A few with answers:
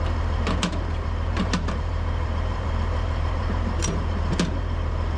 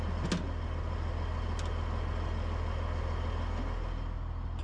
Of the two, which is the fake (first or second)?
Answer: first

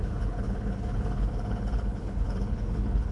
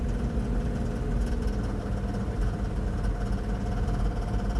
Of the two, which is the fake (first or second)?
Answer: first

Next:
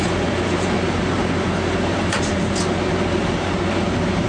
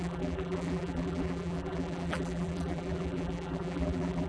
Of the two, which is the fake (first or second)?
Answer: second